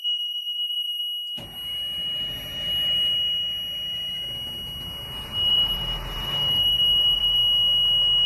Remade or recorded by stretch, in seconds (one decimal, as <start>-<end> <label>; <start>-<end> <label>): 0.0-1.0 remade; 1.0-5.5 recorded; 5.5-7.4 remade; 7.4-8.3 recorded